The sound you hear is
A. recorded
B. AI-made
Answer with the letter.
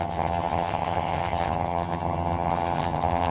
B